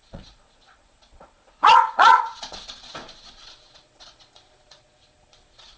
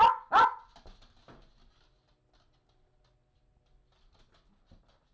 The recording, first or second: second